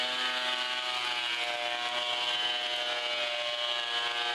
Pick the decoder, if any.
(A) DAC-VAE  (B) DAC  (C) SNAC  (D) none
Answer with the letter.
D